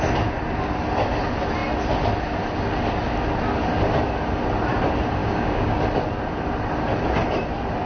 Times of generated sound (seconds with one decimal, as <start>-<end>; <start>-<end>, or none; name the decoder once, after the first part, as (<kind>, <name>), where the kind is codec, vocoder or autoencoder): 5.2-5.8 (codec, DAC)